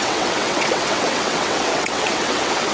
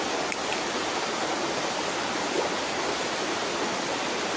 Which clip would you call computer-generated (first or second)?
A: first